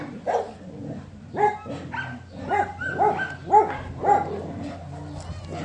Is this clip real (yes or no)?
yes